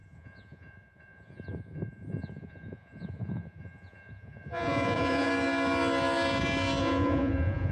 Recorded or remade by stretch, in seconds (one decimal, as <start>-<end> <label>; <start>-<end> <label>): 0.0-5.3 remade; 5.3-6.8 recorded; 6.8-7.7 remade

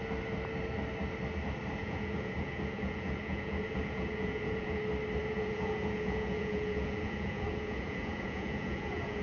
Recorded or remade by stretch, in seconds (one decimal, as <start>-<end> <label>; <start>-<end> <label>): 0.0-1.8 recorded; 1.8-4.8 remade; 4.8-5.2 recorded; 5.2-9.2 remade